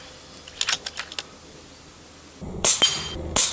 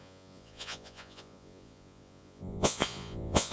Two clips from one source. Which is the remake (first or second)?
second